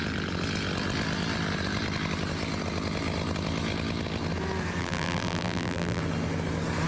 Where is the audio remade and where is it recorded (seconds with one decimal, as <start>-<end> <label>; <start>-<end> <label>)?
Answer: 0.0-4.8 recorded; 4.8-6.0 remade; 6.0-6.9 recorded